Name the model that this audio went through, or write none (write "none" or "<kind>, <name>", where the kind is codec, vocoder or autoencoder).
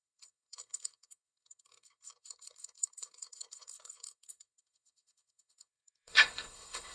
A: codec, SNAC